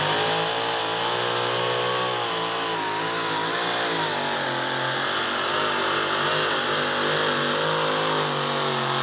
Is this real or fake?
real